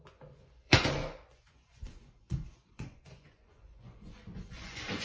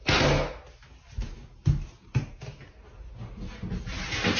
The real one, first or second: second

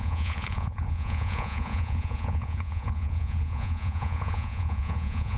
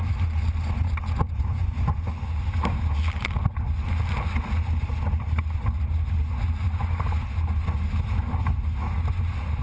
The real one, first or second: second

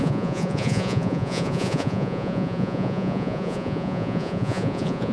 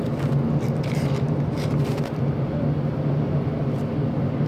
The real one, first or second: second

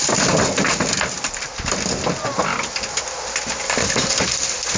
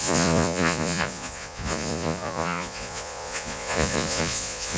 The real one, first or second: first